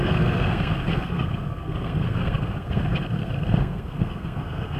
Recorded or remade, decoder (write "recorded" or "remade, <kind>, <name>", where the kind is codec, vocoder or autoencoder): remade, codec, SNAC